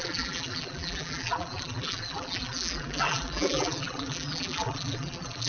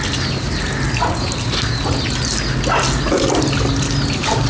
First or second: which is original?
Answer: second